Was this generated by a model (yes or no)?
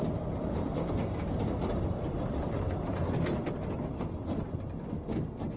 no